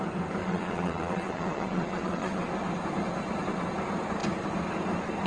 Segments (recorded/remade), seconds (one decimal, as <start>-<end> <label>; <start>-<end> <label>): 0.0-0.4 recorded; 0.4-2.4 remade; 2.4-5.3 recorded